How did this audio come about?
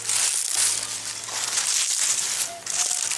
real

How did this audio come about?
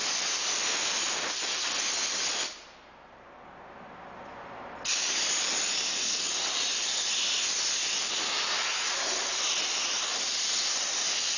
real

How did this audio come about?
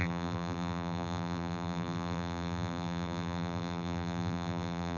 fake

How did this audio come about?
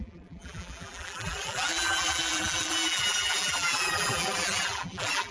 fake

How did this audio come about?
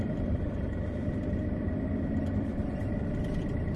fake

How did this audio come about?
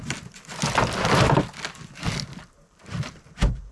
fake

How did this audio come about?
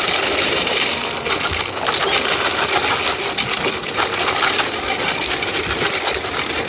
fake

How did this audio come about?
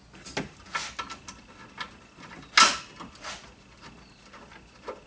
real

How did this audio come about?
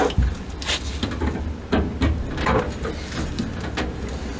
real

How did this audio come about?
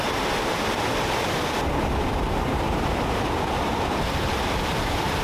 fake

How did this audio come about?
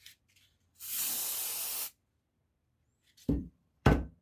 fake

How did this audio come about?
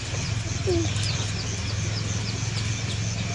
real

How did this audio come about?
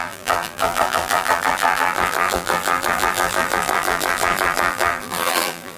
fake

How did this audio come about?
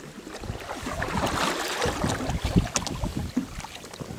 real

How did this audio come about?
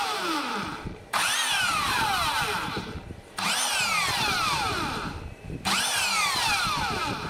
fake